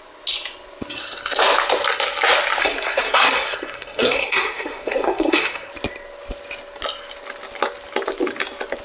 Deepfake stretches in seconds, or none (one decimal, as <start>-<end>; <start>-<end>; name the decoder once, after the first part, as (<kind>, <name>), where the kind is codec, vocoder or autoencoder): 2.6-5.7 (codec, SNAC)